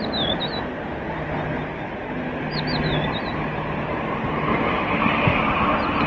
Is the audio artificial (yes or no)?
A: no